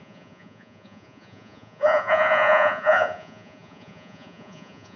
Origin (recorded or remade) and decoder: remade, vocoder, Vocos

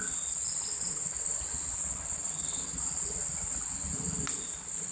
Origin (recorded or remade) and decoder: recorded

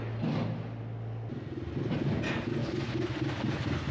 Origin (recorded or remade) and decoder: recorded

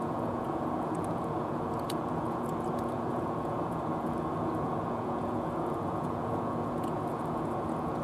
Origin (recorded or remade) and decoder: remade, vocoder, Vocos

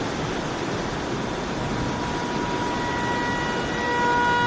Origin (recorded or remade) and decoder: recorded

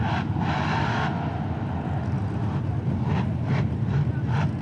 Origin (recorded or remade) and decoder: remade, vocoder, BigVGAN v2